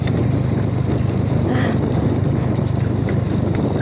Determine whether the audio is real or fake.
real